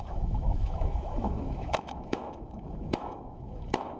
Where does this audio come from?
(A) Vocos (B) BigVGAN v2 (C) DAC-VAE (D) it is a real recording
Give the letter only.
C